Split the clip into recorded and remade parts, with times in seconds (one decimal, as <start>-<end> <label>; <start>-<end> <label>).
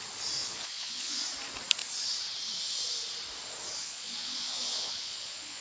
0.0-0.4 recorded; 0.4-1.2 remade; 1.2-3.8 recorded; 3.8-5.6 remade